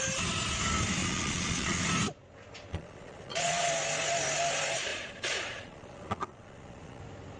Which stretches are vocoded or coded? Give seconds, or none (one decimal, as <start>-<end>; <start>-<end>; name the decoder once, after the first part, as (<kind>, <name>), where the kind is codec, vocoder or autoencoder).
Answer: 1.0-1.8 (vocoder, Vocos); 2.7-3.7; 4.9-7.0